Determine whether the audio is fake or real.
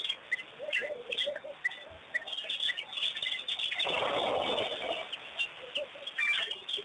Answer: real